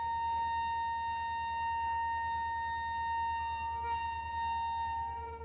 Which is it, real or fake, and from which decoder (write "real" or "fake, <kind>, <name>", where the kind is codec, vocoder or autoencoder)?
real